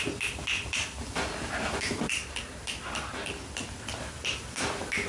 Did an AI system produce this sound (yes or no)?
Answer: yes